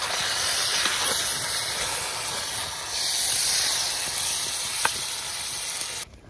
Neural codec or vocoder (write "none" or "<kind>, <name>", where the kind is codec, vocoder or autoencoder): none